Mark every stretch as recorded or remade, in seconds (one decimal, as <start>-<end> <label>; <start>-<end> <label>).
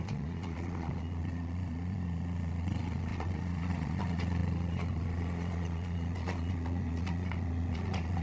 0.0-8.2 remade